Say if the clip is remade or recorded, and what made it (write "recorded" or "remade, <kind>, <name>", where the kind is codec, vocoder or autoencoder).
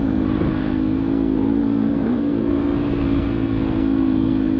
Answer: remade, codec, SNAC